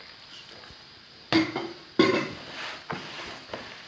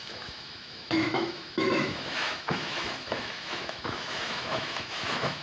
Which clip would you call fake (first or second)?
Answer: second